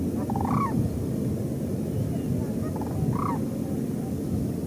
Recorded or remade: recorded